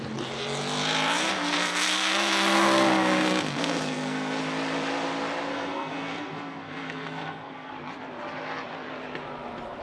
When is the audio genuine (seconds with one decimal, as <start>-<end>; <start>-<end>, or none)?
0.0-1.2; 4.4-5.5; 7.7-9.8